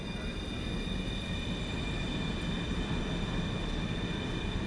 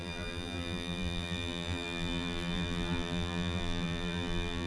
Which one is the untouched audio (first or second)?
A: first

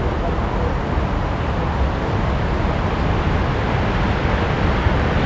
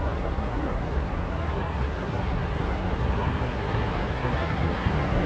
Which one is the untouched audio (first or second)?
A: first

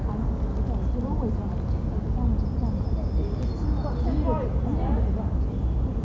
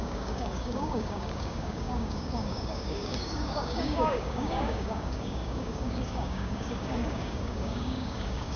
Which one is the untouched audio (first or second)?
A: first